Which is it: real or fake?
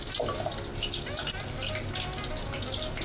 real